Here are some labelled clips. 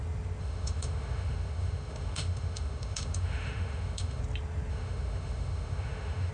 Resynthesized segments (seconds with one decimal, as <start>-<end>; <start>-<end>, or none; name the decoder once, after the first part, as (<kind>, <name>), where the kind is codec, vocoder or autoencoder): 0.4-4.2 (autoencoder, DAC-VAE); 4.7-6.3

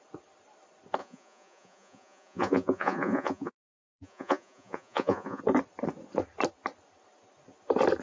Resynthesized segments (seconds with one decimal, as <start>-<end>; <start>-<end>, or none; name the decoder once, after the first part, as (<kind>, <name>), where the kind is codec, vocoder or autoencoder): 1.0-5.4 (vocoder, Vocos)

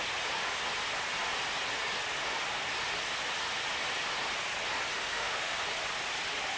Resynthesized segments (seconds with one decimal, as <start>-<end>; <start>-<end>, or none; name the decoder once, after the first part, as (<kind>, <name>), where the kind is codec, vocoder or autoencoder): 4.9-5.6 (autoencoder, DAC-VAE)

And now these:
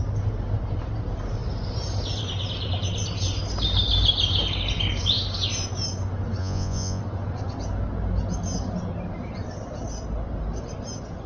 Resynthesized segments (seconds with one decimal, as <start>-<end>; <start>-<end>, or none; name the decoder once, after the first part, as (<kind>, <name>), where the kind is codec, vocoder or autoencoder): 6.4-7.0 (vocoder, Vocos)

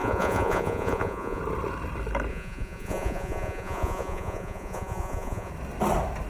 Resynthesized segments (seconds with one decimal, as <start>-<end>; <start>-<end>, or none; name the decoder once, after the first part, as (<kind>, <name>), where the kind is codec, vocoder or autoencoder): 0.0-1.4 (vocoder, Vocos); 2.3-5.5